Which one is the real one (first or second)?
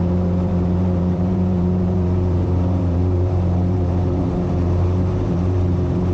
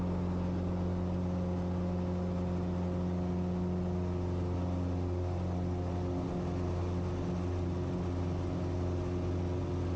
second